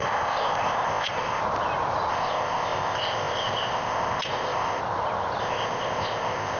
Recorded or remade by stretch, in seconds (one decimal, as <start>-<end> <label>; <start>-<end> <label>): 0.0-1.4 remade; 1.4-2.1 recorded; 2.1-4.8 remade; 4.8-5.4 recorded; 5.4-6.6 remade